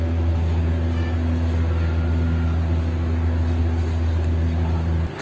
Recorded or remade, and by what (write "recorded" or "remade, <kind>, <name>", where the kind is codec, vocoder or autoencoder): recorded